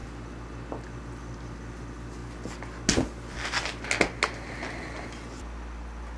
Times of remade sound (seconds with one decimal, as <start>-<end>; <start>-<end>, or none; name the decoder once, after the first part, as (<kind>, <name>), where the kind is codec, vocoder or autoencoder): 1.0-2.2 (vocoder, BigVGAN v2)